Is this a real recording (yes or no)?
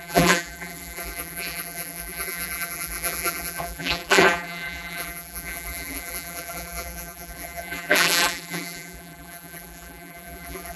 no